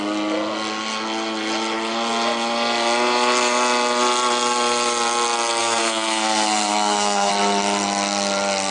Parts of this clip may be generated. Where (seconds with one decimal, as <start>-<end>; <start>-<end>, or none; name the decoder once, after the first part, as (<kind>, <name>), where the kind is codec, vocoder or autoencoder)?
5.6-7.3 (codec, SNAC)